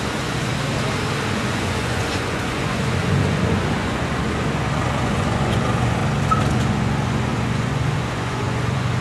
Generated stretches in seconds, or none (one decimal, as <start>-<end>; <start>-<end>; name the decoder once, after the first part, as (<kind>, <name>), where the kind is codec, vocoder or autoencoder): 0.0-0.5 (vocoder, Vocos); 1.3-6.0; 6.5-9.0